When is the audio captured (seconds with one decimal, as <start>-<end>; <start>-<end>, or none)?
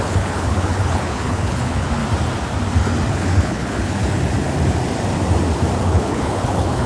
2.0-3.1; 4.0-5.8